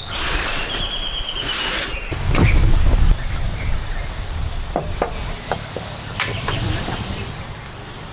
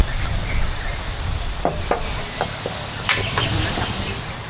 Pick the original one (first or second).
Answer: second